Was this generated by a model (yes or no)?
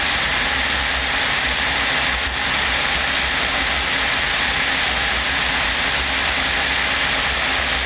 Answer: no